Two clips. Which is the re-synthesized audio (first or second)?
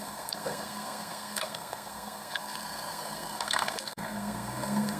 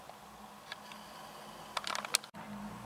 first